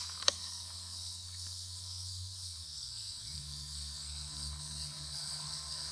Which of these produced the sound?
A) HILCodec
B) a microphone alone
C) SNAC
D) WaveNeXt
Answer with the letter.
C